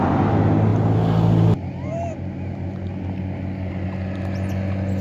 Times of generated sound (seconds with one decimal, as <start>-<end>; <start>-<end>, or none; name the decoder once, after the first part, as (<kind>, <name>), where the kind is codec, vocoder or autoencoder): none